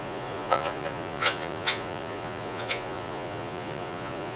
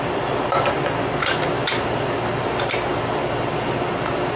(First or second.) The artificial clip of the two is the first